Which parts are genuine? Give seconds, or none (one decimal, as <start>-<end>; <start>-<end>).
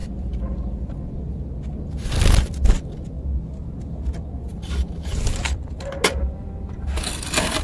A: 0.0-4.5; 5.1-7.6